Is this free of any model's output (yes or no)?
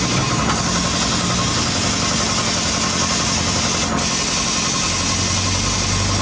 yes